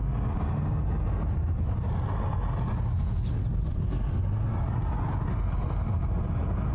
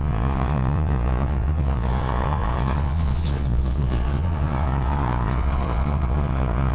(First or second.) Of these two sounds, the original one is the first